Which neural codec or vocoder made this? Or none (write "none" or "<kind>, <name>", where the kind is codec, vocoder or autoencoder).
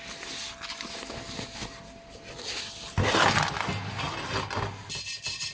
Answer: none